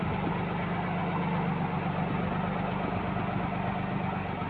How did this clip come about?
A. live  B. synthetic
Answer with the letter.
A